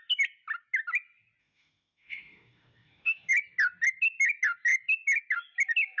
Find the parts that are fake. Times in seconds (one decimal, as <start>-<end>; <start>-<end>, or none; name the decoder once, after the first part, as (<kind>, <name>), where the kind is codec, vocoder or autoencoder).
1.4-3.3 (autoencoder, DAC-VAE)